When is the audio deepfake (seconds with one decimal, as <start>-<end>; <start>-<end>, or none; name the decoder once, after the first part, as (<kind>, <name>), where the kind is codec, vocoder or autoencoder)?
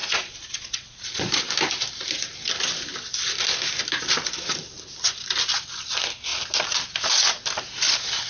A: 0.0-1.4 (vocoder, Vocos)